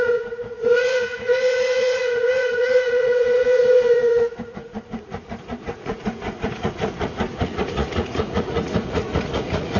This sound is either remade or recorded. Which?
remade